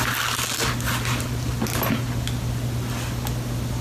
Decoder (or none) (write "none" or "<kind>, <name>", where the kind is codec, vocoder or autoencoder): none